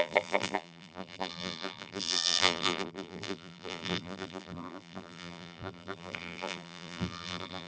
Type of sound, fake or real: fake